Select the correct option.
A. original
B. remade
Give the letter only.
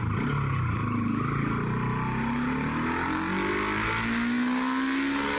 A